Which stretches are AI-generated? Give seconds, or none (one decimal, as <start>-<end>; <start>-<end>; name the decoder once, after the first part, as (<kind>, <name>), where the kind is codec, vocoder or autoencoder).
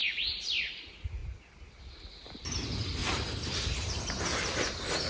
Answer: 0.0-0.7 (vocoder, BigVGAN v2); 3.0-5.1